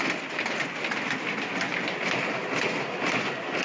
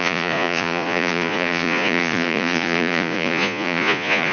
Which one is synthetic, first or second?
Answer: second